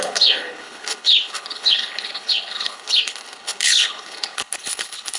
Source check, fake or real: fake